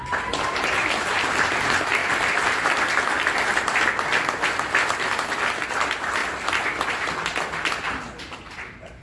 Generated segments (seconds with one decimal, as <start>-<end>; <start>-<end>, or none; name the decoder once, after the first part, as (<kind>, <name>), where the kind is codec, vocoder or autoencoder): none